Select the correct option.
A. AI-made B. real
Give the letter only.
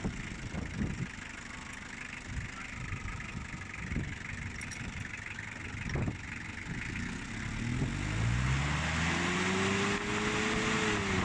B